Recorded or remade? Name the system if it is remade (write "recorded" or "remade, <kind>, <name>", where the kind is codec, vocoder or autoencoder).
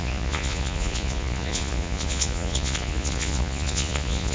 remade, vocoder, Vocos